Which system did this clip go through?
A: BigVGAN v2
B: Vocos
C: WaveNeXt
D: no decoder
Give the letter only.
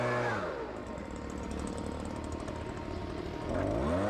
D